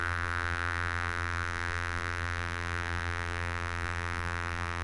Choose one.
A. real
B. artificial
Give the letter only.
B